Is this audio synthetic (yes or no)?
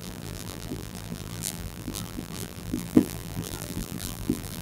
yes